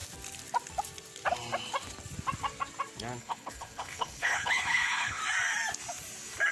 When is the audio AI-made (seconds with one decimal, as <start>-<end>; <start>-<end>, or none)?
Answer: 3.2-5.2